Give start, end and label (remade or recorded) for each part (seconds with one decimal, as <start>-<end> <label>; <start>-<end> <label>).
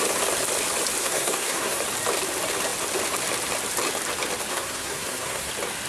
0.0-1.0 recorded; 1.0-1.8 remade; 1.8-4.5 recorded; 4.5-5.5 remade; 5.5-5.9 recorded